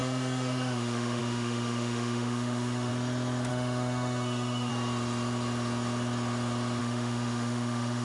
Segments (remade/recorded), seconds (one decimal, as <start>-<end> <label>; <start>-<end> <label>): 0.0-2.9 remade; 2.9-3.5 recorded; 3.5-4.7 remade; 4.7-6.8 recorded; 6.8-8.0 remade